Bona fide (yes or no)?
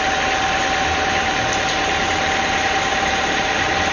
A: yes